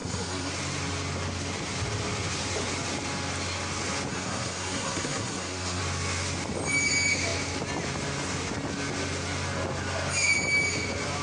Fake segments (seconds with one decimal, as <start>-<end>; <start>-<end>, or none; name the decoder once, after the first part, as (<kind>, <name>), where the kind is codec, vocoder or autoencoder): 0.0-0.5 (codec, SNAC); 4.1-5.8